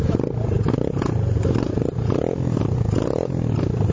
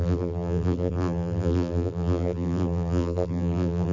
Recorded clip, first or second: first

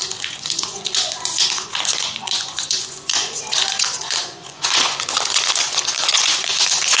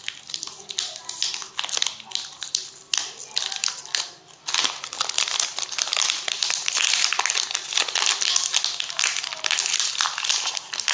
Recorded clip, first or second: second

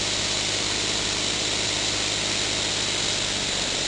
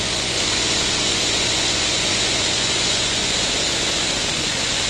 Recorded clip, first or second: first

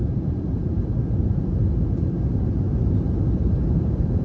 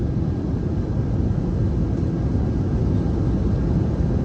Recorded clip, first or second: second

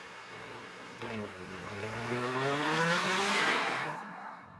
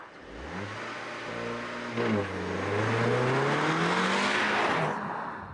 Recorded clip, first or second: second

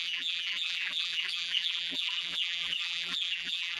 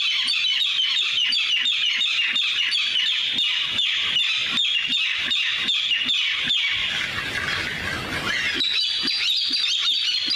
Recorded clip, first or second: second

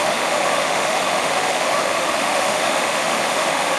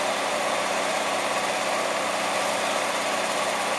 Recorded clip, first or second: second